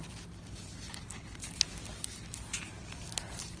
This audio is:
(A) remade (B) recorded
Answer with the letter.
B